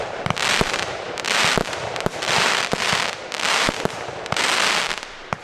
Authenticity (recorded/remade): remade